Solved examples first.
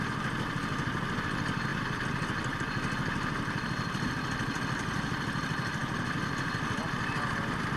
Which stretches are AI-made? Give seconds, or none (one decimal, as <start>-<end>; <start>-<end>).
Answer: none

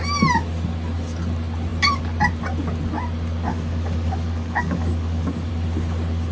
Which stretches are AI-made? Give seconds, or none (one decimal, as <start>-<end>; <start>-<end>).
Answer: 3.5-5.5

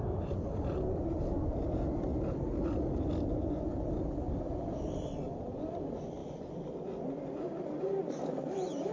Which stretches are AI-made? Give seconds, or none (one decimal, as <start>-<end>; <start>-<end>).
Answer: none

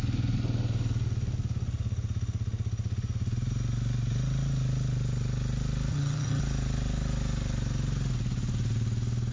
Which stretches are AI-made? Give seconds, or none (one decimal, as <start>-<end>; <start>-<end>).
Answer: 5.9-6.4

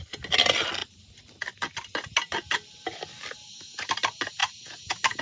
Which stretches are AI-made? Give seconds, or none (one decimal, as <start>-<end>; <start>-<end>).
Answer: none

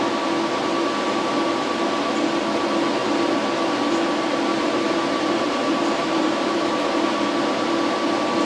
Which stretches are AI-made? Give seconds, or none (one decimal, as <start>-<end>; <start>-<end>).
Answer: 4.5-7.3

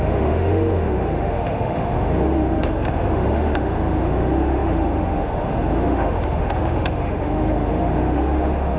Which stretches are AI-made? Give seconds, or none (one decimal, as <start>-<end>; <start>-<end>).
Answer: 0.0-8.8

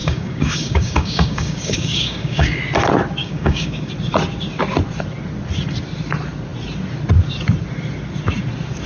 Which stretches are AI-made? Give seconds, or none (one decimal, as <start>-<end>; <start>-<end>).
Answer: 0.0-2.6; 3.2-3.9